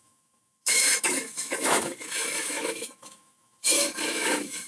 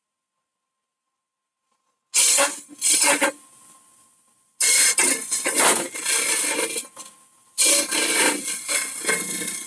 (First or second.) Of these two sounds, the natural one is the second